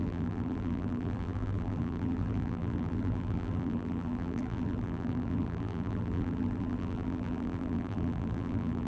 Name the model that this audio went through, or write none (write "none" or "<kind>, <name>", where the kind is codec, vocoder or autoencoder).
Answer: vocoder, BigVGAN v2